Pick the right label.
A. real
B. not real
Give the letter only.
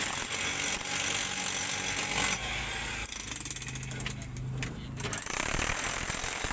A